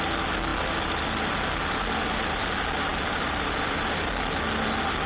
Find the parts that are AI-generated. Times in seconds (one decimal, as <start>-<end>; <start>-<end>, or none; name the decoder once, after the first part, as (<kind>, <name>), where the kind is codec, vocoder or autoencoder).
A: 0.5-2.4 (vocoder, BigVGAN v2); 2.9-4.1

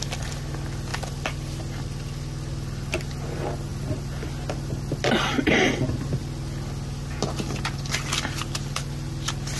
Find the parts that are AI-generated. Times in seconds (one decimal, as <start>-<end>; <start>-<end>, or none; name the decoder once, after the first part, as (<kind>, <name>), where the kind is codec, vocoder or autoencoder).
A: none

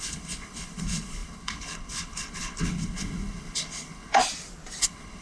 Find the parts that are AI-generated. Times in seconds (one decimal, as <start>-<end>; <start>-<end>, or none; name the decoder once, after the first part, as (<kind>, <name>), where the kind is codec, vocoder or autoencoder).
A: 0.0-4.2 (codec, HILCodec); 4.8-5.2

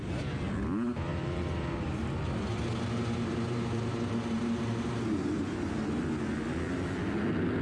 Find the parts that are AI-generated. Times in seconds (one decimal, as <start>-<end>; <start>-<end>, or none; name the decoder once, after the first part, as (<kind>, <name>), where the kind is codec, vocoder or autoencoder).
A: 1.1-5.7 (vocoder, BigVGAN v2)

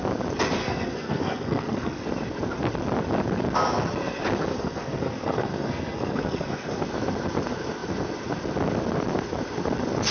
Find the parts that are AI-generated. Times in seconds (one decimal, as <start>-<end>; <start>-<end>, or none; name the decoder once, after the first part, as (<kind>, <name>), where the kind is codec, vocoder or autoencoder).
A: 0.6-2.1 (codec, SNAC); 4.5-6.8

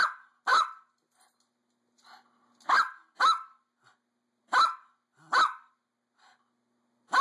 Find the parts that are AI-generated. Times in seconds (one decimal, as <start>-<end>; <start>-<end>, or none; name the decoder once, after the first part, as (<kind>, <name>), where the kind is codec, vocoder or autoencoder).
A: none

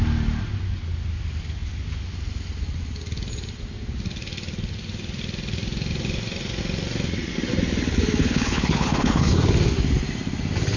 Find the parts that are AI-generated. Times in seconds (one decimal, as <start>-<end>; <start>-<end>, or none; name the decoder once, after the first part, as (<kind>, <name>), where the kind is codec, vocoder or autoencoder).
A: 8.2-9.4 (codec, HILCodec)